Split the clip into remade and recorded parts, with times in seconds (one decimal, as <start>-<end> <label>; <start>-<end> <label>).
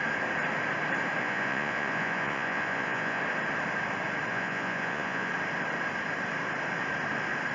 0.0-1.2 recorded; 1.2-3.2 remade; 3.2-4.3 recorded; 4.3-5.3 remade; 5.3-7.5 recorded